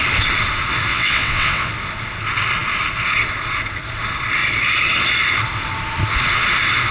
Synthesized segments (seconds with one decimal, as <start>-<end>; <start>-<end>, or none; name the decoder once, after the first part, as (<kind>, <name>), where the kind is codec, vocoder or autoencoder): 0.9-1.7 (vocoder, WaveNeXt)